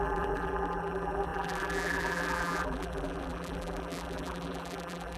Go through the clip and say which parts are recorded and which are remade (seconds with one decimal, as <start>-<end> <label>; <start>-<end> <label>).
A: 0.0-5.2 remade